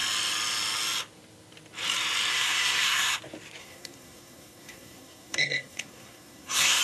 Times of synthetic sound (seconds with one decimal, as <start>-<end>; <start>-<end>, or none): 2.3-3.2; 3.6-6.8